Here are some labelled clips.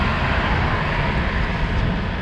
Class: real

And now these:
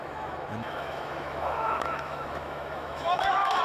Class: fake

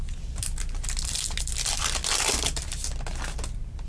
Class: real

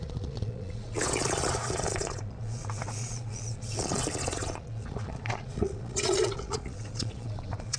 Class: fake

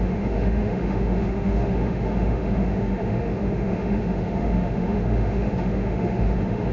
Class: fake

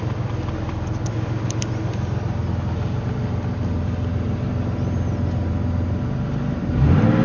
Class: real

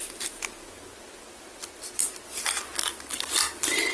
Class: real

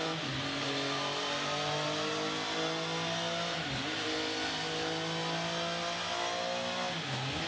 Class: real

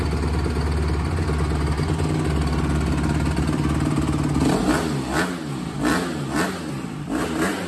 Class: real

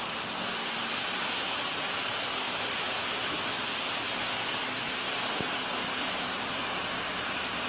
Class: real